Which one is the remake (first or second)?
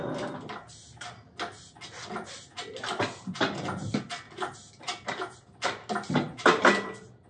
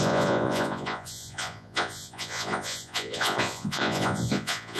second